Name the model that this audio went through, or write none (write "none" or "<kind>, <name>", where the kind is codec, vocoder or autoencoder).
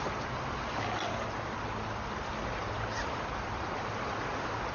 none